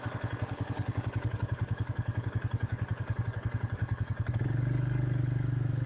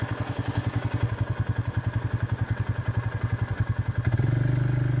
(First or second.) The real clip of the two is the second